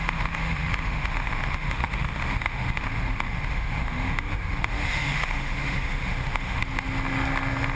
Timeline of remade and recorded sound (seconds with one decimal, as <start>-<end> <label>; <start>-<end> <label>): 0.0-6.6 remade; 6.6-7.8 recorded